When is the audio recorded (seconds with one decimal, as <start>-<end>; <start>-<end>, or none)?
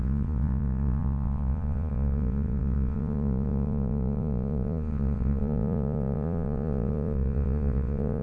none